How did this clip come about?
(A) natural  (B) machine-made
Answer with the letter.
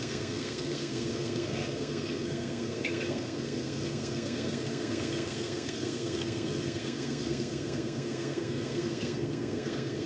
B